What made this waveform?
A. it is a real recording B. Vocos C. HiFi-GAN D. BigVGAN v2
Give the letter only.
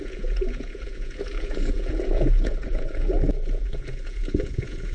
B